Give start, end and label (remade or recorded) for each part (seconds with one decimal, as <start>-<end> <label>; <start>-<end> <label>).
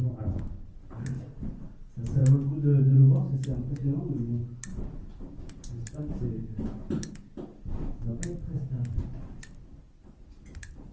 0.0-1.2 remade; 1.2-4.7 recorded; 4.7-6.2 remade; 6.2-10.9 recorded